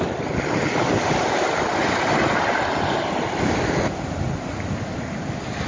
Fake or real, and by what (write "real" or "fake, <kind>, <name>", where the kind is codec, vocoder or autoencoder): real